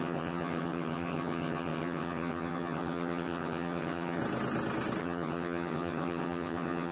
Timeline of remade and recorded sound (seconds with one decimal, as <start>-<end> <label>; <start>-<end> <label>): 0.0-4.2 remade; 4.2-5.0 recorded; 5.0-6.9 remade